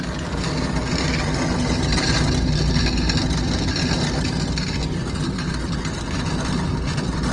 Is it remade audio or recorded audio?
recorded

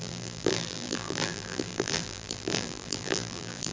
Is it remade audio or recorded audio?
remade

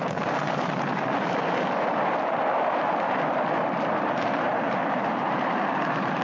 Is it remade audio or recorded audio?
remade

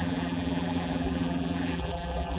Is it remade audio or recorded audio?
remade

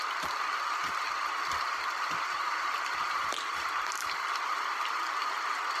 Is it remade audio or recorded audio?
remade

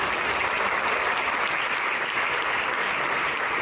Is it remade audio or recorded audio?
recorded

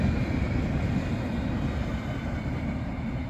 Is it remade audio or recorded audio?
recorded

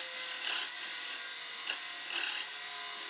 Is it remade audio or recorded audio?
recorded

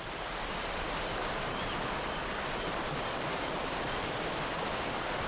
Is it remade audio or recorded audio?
remade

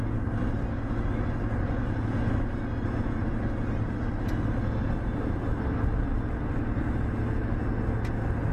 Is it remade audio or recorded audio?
recorded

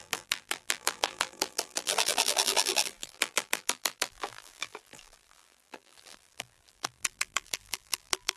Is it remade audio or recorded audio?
remade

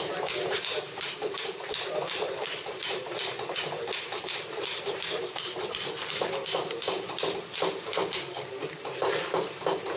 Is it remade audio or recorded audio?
remade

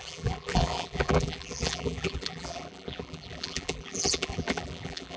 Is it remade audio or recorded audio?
remade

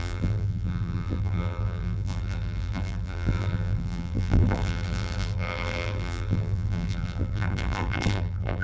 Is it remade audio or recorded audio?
remade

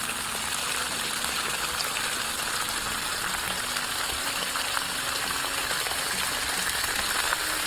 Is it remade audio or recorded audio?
recorded